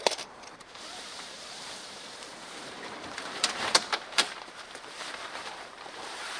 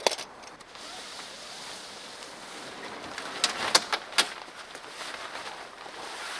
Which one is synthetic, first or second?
first